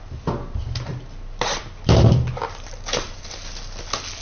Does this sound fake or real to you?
real